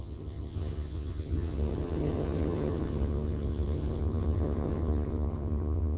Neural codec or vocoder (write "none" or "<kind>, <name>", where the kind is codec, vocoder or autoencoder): vocoder, HiFi-GAN